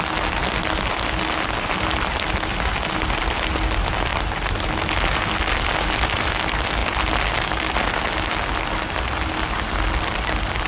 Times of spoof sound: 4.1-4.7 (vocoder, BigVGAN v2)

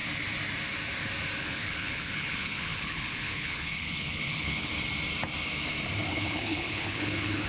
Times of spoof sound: 1.4-4.7 (codec, HILCodec); 6.1-7.5

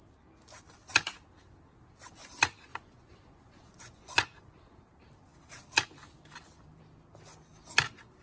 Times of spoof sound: 2.7-4.8 (vocoder, Vocos)

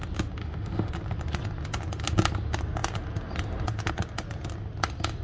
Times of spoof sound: 0.4-0.9 (autoencoder, DAC-VAE)

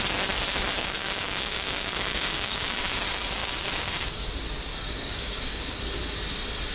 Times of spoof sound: 0.8-3.0 (codec, DAC); 3.4-4.3; 4.7-5.8

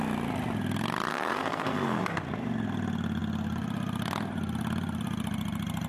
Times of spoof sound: 1.1-2.0 (codec, SNAC)

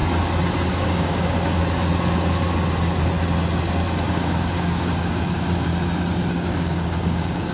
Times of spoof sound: 0.7-1.6 (codec, DAC); 4.1-5.7; 6.3-7.5